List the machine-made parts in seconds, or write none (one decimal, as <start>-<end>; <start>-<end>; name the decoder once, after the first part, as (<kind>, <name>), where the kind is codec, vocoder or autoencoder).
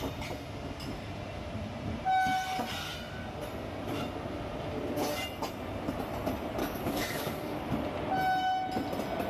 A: 6.6-7.7 (codec, DAC)